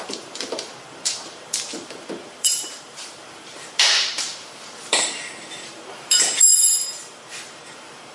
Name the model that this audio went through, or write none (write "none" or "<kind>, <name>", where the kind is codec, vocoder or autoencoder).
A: vocoder, BigVGAN v2